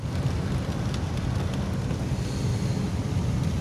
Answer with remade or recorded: recorded